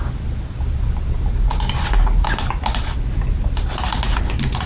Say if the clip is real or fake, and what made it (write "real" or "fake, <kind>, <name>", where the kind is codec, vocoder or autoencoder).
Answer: real